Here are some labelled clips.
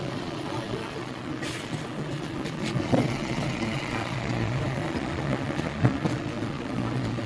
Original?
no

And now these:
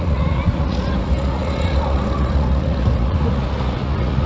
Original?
no